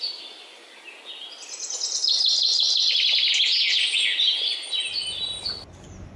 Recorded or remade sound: recorded